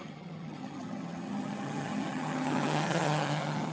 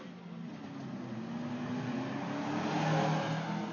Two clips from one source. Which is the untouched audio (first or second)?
second